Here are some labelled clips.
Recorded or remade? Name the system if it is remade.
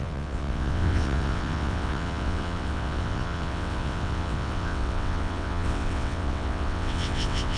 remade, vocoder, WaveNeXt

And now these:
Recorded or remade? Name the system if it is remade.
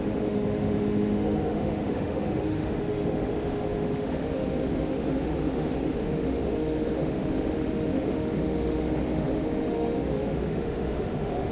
remade, autoencoder, DAC-VAE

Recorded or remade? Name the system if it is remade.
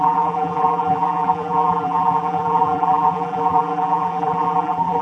remade, vocoder, BigVGAN v2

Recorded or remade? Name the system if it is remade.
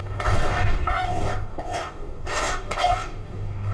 remade, codec, DAC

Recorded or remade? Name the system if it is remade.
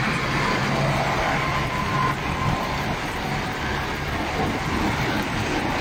recorded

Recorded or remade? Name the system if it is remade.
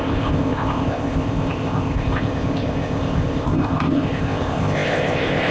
remade, codec, ZipCodec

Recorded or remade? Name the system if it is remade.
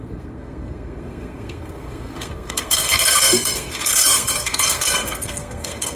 remade, codec, SNAC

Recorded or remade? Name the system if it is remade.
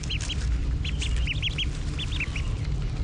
recorded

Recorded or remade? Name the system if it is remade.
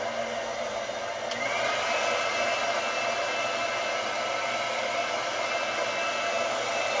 recorded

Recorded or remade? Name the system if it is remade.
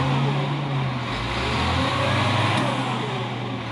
recorded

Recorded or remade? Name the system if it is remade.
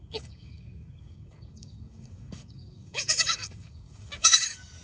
remade, codec, DAC